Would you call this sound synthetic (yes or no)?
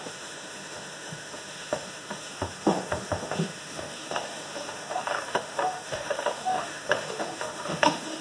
yes